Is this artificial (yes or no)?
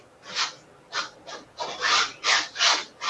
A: no